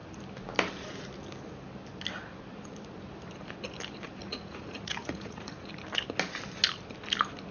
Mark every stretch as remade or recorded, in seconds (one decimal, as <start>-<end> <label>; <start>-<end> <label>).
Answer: 0.0-4.2 recorded; 4.2-5.7 remade; 5.7-7.5 recorded